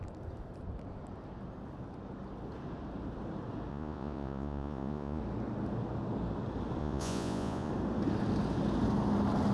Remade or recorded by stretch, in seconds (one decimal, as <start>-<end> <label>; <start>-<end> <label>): 0.0-3.7 recorded; 3.7-5.2 remade; 5.2-6.8 recorded; 6.8-7.7 remade; 7.7-9.5 recorded